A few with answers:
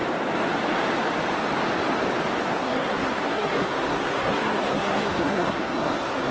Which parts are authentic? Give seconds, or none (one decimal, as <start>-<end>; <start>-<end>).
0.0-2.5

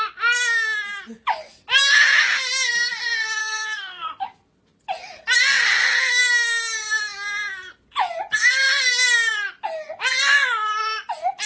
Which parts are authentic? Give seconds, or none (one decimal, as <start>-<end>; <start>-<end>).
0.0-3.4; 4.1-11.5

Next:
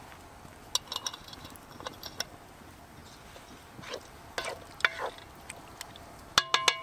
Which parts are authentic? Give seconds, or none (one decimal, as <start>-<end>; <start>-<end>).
0.0-6.8

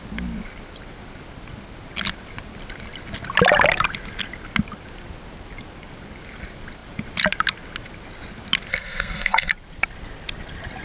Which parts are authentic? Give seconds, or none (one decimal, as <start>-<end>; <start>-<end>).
0.0-8.7; 9.5-10.8

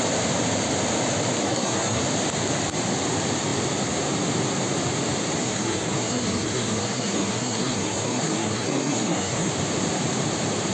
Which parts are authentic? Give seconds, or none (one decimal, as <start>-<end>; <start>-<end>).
0.0-1.4; 2.0-5.4; 9.5-10.7

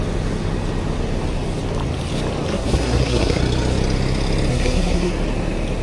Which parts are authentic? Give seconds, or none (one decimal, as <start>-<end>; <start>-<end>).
0.0-2.5; 3.4-4.5; 5.1-5.8

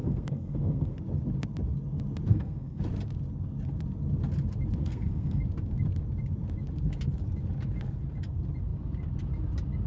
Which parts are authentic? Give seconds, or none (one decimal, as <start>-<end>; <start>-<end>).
1.0-2.3; 2.8-4.8; 5.4-9.9

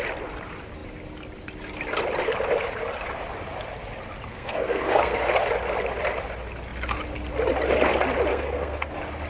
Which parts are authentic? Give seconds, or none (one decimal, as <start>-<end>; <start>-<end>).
0.0-4.3; 5.3-8.3; 8.9-9.3